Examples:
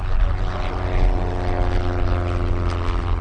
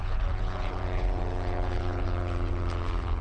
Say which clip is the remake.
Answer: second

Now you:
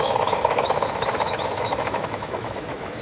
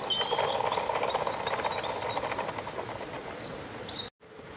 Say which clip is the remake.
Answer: first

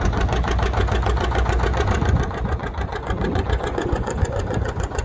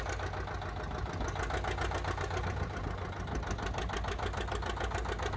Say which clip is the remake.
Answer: first